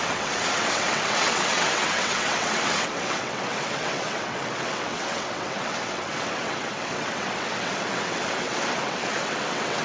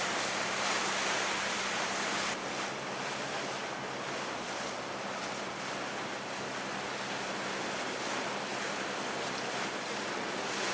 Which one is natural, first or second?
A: second